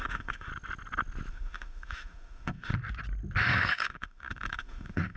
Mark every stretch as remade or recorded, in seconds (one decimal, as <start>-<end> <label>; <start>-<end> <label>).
0.0-0.5 remade; 0.5-1.3 recorded; 1.3-2.7 remade; 2.7-3.4 recorded; 3.4-5.2 remade